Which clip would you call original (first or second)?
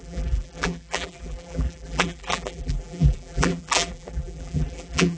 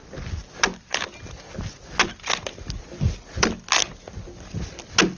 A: second